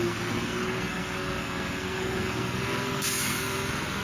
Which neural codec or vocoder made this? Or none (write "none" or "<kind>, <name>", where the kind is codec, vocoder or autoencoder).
codec, SNAC